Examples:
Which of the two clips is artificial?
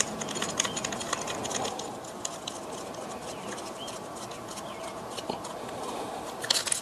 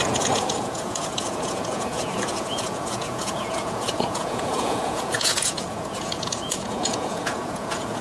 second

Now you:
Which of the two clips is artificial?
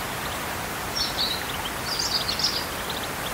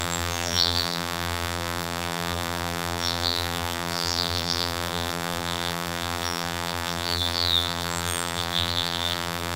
second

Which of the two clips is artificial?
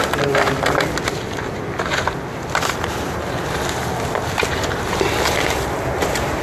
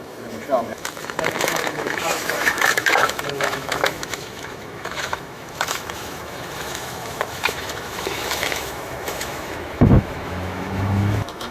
second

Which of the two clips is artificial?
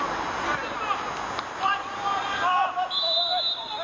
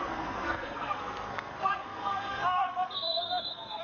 second